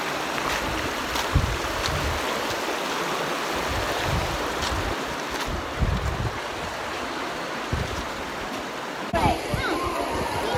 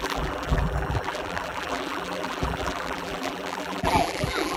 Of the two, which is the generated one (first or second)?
second